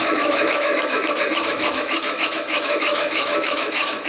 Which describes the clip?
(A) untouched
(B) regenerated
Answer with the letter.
B